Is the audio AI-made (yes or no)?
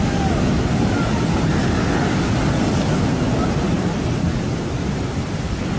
no